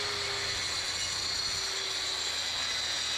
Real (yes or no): yes